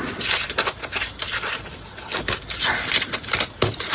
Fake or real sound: real